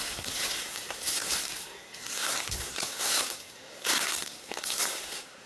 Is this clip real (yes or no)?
no